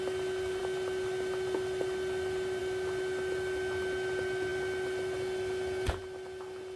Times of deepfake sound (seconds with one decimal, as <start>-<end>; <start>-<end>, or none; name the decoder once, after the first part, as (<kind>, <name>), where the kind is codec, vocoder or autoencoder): none